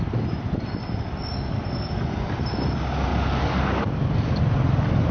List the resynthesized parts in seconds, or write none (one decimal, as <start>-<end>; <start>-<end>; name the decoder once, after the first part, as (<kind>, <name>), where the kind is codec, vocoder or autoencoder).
3.1-4.4 (codec, DAC)